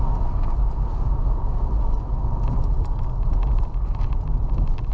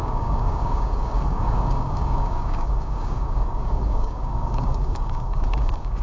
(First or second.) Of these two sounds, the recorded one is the first